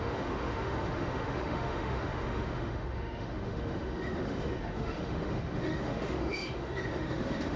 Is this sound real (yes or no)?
no